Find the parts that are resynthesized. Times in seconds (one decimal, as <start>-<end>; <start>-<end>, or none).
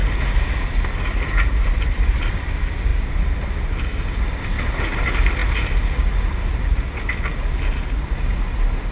none